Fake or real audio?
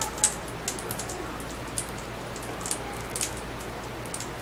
real